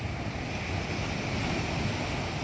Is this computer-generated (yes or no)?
no